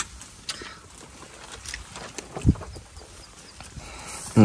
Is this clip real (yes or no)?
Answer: yes